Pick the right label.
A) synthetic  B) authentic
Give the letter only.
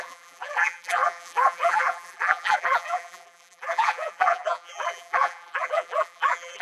A